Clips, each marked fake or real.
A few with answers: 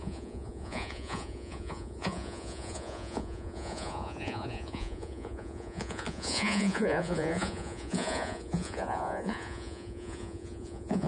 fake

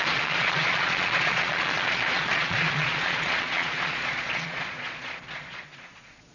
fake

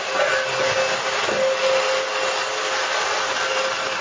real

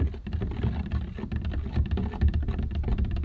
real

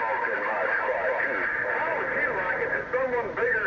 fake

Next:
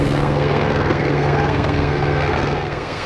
fake